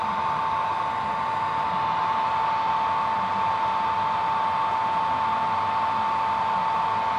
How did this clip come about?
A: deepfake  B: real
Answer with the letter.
B